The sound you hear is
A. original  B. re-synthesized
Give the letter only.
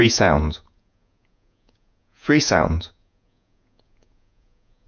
B